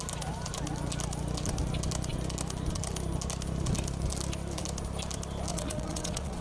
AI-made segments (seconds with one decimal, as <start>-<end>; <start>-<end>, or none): 5.5-6.4

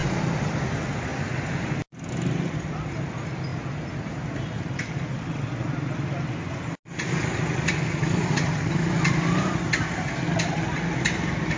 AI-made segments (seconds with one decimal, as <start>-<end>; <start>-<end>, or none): none